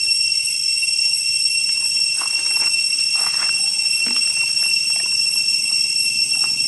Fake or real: real